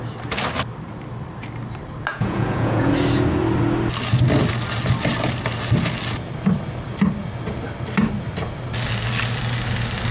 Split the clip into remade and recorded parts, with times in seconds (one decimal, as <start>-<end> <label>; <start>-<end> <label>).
0.0-2.1 recorded; 2.1-2.9 remade; 2.9-10.1 recorded